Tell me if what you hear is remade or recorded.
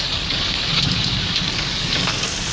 remade